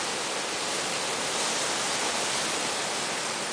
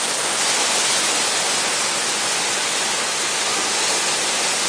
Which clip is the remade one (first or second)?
second